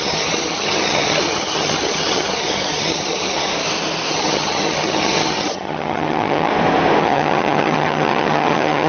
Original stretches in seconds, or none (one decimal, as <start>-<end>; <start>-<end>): 3.5-4.1; 6.5-7.0